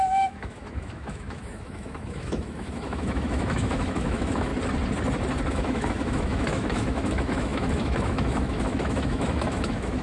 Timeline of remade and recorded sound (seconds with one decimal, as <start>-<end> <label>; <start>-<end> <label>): 0.0-4.5 remade; 4.5-5.5 recorded; 5.5-10.0 remade